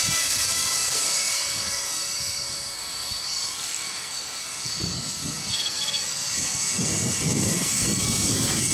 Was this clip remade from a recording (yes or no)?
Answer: yes